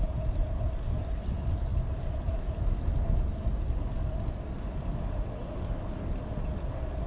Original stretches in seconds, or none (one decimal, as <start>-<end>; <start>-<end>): 0.0-7.1